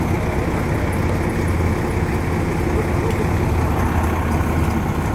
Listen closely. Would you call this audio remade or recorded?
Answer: recorded